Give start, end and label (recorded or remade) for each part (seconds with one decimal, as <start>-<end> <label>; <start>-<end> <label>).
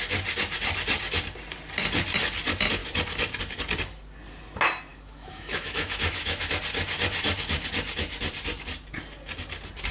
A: 0.0-4.9 recorded; 4.9-6.5 remade; 6.5-9.9 recorded